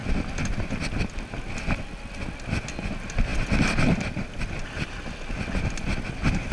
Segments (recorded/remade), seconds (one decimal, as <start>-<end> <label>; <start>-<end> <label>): 0.0-6.5 recorded